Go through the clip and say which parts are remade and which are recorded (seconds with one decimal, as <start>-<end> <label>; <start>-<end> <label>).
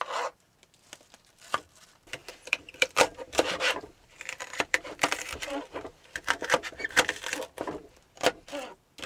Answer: 0.0-2.2 recorded; 2.2-7.0 remade; 7.0-9.1 recorded